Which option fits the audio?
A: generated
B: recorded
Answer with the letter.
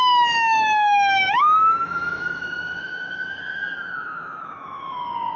A